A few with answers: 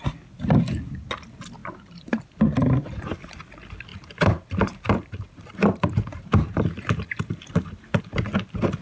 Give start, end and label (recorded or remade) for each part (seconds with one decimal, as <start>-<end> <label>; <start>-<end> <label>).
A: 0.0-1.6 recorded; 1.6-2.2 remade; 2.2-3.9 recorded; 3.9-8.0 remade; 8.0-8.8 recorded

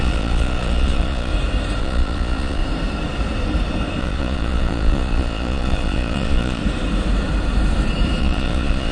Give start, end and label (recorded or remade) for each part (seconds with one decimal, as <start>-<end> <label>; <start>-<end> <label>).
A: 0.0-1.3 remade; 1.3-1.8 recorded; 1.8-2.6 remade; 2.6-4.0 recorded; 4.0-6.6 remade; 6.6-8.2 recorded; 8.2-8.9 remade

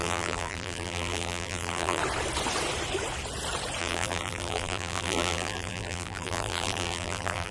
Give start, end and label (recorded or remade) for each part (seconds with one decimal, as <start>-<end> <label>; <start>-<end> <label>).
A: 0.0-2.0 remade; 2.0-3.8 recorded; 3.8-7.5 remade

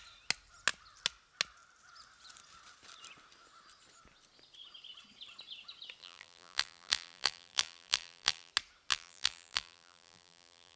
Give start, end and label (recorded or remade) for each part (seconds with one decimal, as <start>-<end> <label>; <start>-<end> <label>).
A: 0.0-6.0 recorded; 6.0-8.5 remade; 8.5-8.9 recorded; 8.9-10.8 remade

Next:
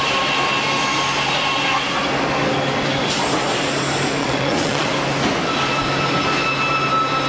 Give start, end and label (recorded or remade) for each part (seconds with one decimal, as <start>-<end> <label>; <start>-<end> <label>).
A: 0.0-4.2 recorded; 4.2-4.9 remade; 4.9-7.3 recorded